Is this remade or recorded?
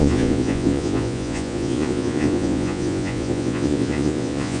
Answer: remade